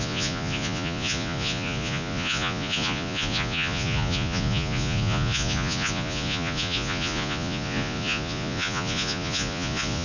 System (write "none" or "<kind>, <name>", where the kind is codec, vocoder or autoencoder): vocoder, Vocos